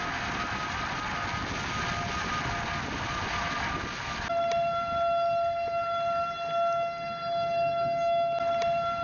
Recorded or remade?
recorded